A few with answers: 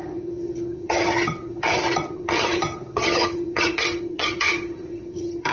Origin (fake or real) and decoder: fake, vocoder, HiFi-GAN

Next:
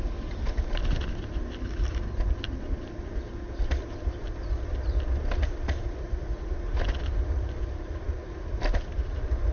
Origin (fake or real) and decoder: real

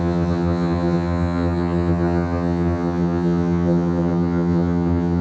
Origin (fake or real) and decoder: fake, vocoder, HiFi-GAN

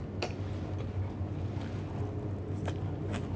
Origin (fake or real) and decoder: real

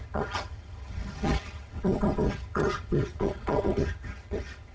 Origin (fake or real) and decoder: fake, vocoder, HiFi-GAN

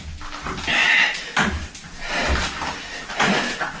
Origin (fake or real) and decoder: real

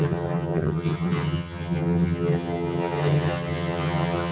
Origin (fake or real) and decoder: fake, vocoder, HiFi-GAN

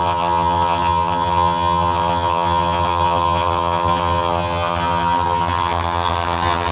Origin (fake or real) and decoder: fake, vocoder, HiFi-GAN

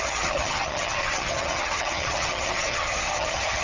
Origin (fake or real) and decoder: fake, vocoder, HiFi-GAN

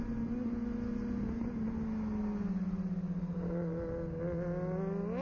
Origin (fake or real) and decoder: real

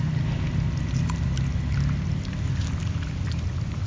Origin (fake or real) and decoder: real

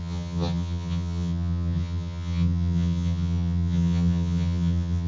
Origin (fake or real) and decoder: fake, vocoder, HiFi-GAN